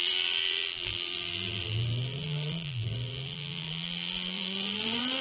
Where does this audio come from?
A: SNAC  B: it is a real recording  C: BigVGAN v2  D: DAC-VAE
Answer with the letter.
C